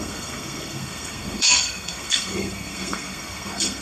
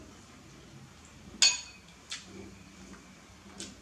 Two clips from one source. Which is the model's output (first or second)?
first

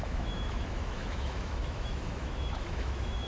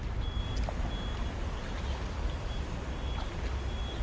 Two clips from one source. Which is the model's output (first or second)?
first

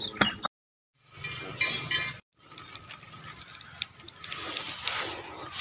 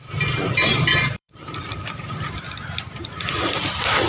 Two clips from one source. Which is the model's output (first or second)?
second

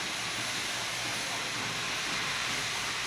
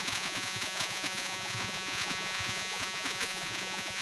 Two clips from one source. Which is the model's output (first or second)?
second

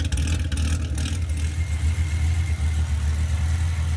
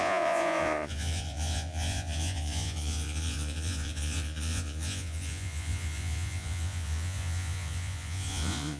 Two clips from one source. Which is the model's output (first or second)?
second